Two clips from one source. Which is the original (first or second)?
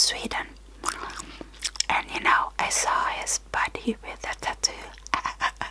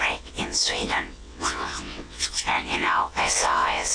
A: first